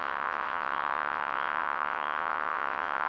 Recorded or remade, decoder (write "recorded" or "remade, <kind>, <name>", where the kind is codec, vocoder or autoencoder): remade, vocoder, WaveNeXt